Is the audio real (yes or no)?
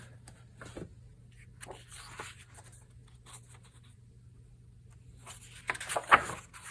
yes